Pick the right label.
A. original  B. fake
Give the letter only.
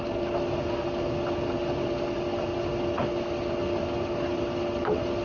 A